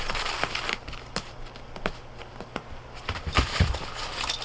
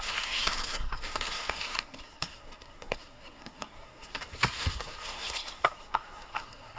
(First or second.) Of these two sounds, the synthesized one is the second